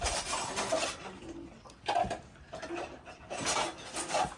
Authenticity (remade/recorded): recorded